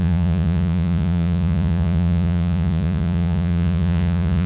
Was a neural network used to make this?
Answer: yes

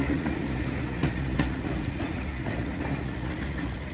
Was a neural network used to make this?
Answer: yes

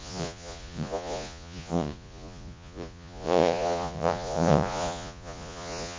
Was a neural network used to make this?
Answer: yes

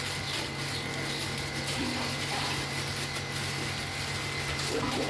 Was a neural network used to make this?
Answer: no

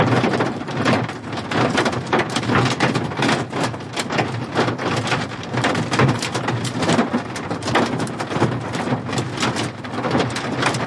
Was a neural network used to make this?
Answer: no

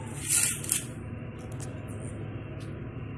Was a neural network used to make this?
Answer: no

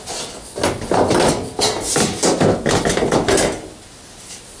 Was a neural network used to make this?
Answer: no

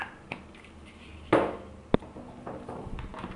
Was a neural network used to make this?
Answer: no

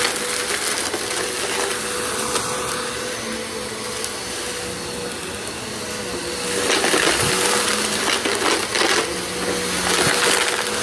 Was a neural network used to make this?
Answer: no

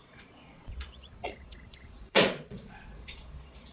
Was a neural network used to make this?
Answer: yes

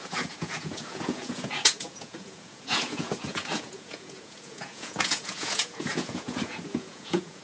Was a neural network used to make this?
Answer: yes